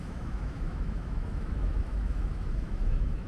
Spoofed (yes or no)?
yes